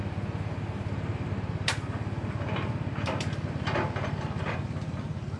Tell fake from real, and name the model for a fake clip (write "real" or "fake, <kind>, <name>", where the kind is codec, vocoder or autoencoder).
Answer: real